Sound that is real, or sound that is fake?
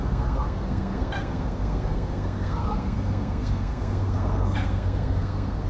fake